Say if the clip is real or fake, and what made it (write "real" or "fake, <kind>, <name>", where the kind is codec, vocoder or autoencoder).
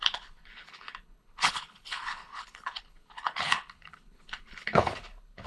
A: fake, codec, HILCodec